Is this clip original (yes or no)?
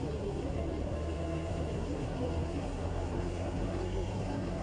no